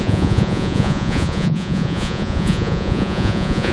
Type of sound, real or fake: fake